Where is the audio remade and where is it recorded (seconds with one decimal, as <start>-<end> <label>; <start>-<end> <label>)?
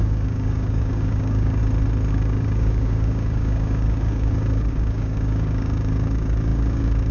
0.0-1.6 remade; 1.6-2.1 recorded; 2.1-7.1 remade